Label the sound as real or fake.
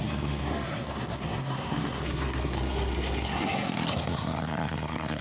fake